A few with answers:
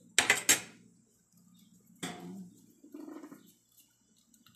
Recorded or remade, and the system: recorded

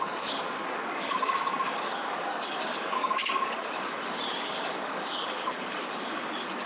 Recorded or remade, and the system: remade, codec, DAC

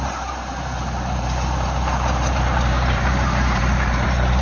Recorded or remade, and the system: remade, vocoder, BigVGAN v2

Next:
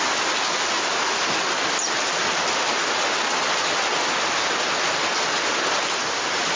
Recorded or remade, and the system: recorded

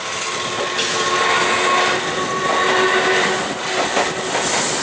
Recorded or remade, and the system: recorded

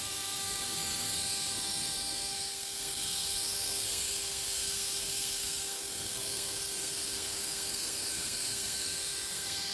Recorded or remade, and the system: remade, codec, SNAC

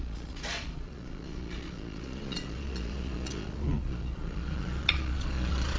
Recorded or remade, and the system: remade, vocoder, Vocos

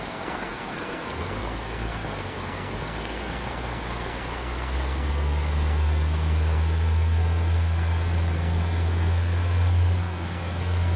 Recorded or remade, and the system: remade, codec, SNAC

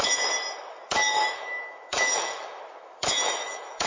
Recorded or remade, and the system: remade, autoencoder, DAC-VAE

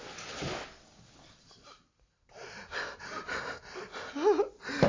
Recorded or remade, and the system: recorded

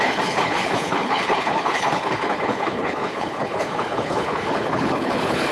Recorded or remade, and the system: remade, codec, HILCodec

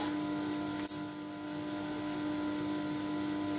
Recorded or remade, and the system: recorded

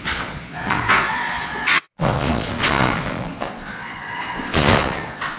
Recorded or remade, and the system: remade, vocoder, Vocos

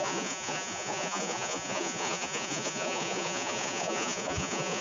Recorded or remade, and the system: remade, vocoder, Vocos